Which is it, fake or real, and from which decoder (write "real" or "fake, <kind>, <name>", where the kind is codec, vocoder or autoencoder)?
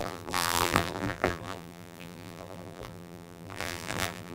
fake, vocoder, BigVGAN v2